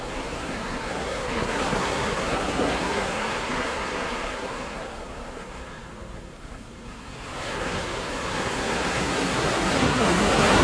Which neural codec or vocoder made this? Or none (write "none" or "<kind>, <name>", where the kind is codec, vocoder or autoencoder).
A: codec, SNAC